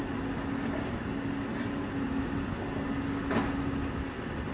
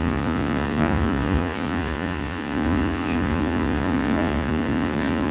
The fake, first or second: second